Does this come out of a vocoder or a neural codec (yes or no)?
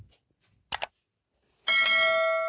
no